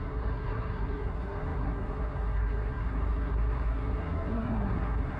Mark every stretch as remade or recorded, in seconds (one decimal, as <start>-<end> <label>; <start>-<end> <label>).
0.0-5.2 remade